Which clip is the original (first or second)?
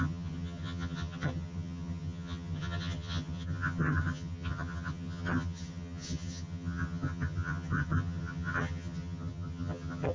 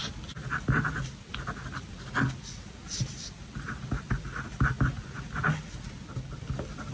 second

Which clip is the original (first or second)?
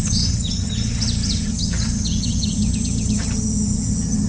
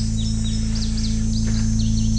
second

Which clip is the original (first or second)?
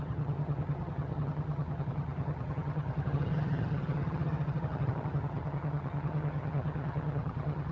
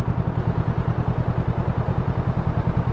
second